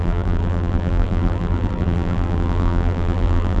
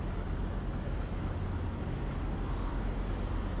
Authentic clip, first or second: second